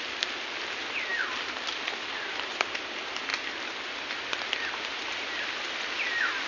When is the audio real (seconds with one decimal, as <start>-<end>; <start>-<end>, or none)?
0.0-6.5